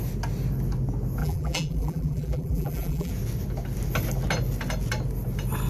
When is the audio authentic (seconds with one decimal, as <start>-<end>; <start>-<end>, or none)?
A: 0.0-1.2; 3.1-5.7